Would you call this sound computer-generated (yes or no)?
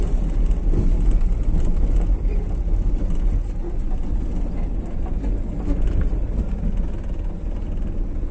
no